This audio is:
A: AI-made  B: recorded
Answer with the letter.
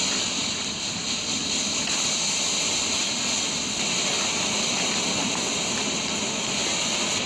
B